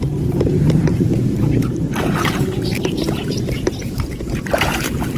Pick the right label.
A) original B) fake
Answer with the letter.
B